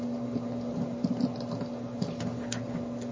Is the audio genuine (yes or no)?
yes